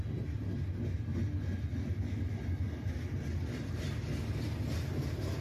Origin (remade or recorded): recorded